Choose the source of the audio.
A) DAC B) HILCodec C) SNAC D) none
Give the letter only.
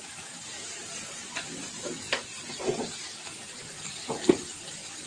D